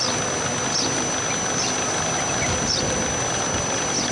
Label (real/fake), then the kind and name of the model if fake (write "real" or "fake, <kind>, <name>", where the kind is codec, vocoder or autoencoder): real